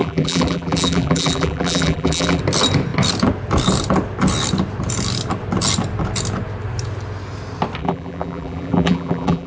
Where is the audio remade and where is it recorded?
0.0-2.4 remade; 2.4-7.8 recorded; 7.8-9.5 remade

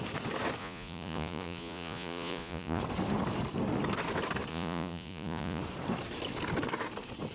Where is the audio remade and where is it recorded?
0.0-0.6 recorded; 0.6-2.8 remade; 2.8-4.5 recorded; 4.5-5.6 remade; 5.6-7.3 recorded

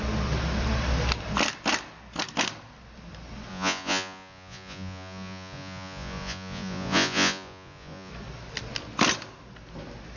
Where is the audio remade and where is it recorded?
0.0-3.5 recorded; 3.5-8.1 remade; 8.1-10.2 recorded